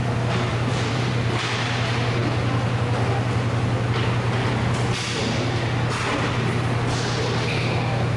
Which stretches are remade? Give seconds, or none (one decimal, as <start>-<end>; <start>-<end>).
0.5-1.1